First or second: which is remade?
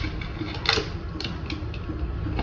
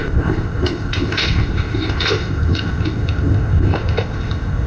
second